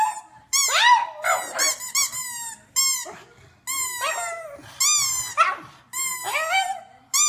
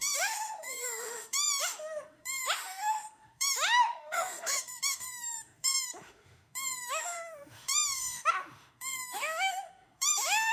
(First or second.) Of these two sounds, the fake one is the second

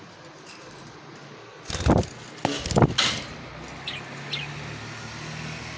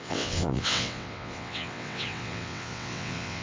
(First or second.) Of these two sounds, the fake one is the second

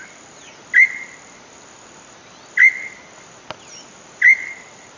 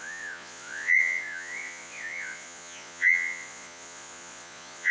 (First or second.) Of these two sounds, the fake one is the second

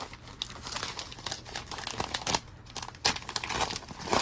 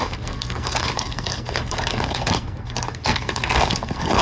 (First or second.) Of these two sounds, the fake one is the second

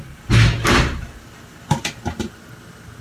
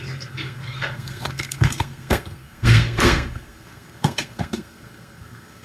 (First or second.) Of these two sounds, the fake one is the second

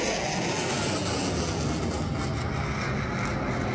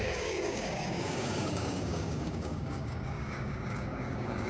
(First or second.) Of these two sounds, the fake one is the second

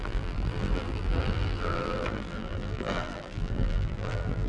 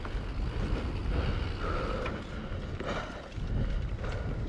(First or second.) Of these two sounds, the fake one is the first